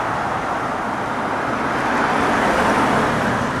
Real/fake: real